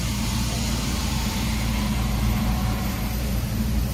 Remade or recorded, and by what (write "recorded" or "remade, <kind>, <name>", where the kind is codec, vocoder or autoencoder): remade, vocoder, BigVGAN v2